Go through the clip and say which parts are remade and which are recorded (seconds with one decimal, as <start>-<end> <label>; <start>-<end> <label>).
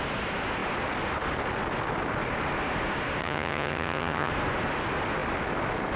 0.0-3.2 recorded; 3.2-4.3 remade; 4.3-6.0 recorded